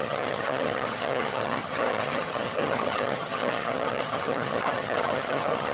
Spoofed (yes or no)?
yes